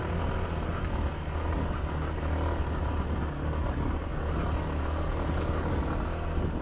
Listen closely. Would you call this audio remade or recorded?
recorded